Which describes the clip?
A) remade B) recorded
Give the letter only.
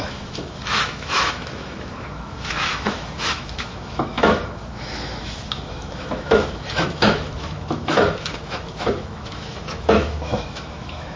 A